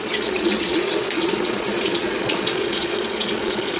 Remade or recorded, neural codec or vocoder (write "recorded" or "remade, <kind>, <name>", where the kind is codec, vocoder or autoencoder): remade, vocoder, Vocos